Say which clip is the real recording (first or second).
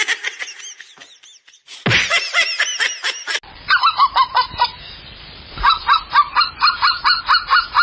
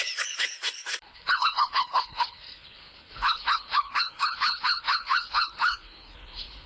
first